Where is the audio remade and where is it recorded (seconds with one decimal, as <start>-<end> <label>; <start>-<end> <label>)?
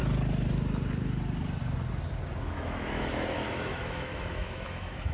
0.0-2.4 recorded; 2.4-5.1 remade